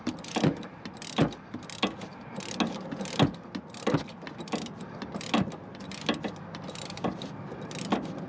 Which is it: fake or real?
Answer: real